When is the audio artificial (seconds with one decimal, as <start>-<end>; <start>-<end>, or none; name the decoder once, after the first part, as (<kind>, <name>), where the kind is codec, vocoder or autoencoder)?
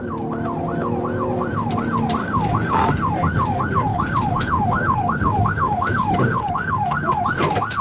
2.2-2.9 (codec, DAC); 3.9-7.2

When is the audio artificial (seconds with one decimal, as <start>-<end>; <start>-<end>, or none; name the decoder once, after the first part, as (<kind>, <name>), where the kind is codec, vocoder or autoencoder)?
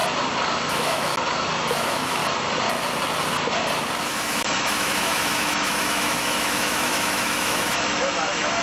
0.7-1.1 (autoencoder, DAC-VAE); 1.8-2.2; 4.0-8.6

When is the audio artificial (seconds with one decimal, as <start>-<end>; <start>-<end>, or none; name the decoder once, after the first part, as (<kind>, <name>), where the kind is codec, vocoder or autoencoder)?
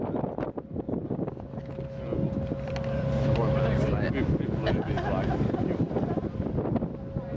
0.0-1.0 (vocoder, BigVGAN v2); 2.3-3.4; 5.3-7.4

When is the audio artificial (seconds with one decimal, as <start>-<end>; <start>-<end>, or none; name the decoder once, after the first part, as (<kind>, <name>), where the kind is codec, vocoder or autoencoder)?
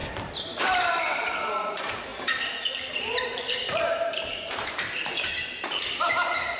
0.0-6.6 (vocoder, BigVGAN v2)